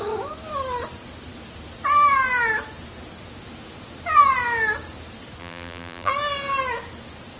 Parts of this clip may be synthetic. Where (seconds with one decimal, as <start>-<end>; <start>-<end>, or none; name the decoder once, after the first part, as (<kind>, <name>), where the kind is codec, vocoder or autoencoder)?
5.4-6.1 (vocoder, BigVGAN v2)